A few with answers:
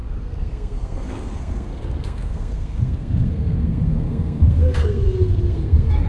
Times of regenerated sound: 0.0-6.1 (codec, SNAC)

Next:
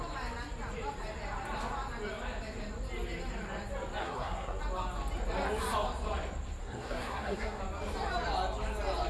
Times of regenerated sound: 4.0-4.6 (codec, SNAC); 6.6-7.6

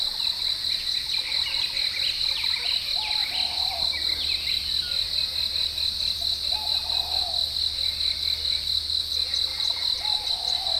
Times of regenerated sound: none

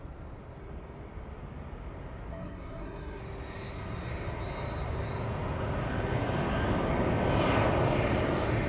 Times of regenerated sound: 2.3-3.2 (codec, SNAC)

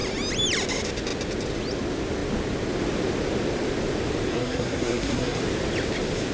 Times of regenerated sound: 4.3-5.4 (codec, SNAC)

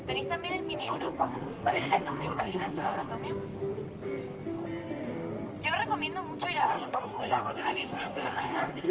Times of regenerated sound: 0.8-3.1 (codec, SNAC); 6.6-8.9